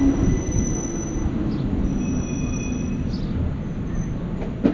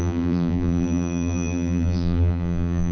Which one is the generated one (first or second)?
second